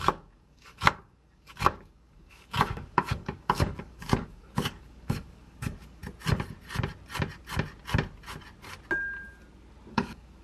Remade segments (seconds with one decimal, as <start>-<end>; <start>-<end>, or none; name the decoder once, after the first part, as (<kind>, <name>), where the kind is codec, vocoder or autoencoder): 0.0-6.0 (codec, DAC); 9.9-10.4